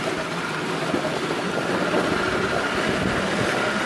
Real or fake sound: real